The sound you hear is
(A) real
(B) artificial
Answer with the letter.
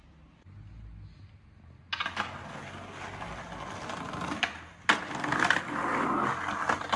A